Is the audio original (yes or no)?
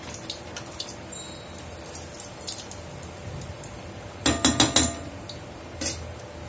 yes